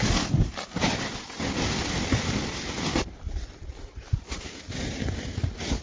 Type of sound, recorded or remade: recorded